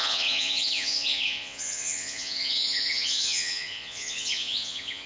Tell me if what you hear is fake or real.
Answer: fake